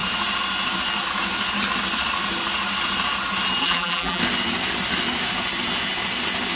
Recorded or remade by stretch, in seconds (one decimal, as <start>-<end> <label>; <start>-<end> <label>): 0.0-3.6 recorded; 3.6-4.2 remade; 4.2-6.6 recorded